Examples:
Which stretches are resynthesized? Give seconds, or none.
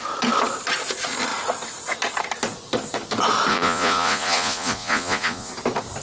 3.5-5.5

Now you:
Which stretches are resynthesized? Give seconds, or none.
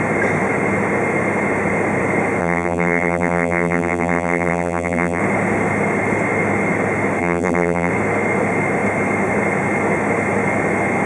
2.4-5.2; 7.2-7.9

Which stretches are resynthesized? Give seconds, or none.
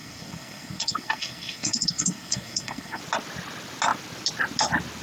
0.0-3.0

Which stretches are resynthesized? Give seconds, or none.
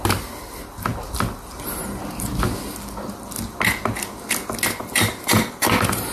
4.8-6.1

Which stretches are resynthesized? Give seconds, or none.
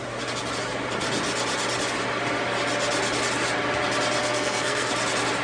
4.2-4.9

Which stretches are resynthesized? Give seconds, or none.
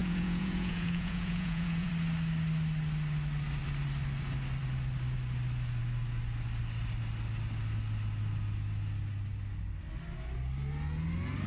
0.0-1.9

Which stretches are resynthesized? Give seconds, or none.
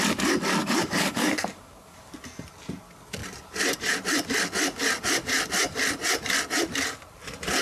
0.6-2.1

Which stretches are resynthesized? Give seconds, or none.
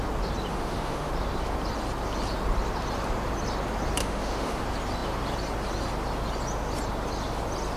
0.5-1.1; 4.0-4.6